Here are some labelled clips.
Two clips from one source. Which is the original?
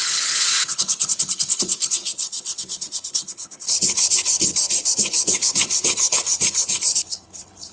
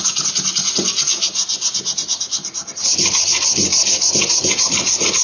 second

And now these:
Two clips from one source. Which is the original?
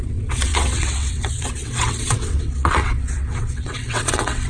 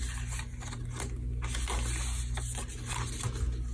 second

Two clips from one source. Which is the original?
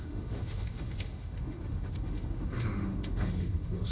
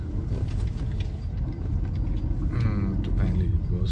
second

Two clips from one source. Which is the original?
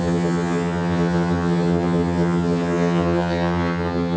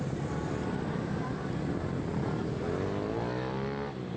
second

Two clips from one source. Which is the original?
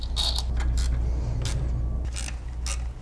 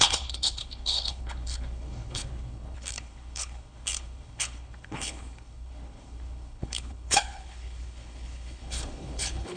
first